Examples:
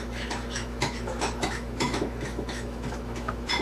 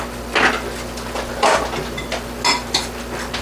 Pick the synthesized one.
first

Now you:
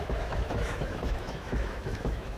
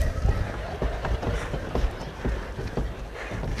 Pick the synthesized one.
first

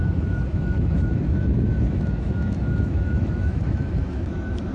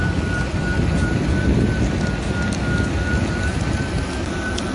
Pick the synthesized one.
first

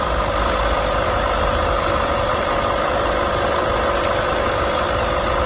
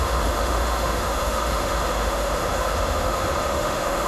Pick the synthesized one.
second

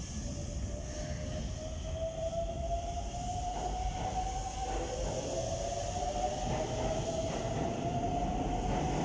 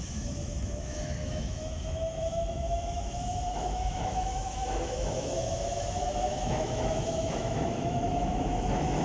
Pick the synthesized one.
second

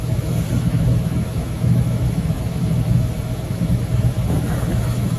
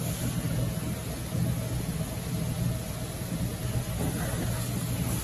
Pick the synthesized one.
first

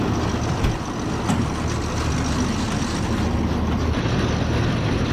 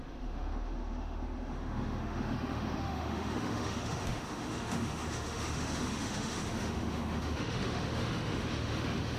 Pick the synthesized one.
second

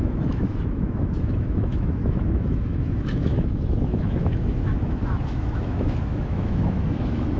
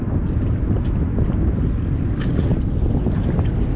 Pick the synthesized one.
first